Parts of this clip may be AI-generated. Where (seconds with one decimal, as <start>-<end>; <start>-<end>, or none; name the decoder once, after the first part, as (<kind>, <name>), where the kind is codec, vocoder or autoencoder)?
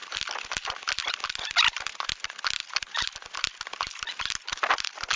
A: none